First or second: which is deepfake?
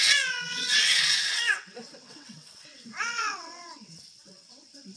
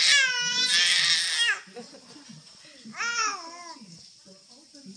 first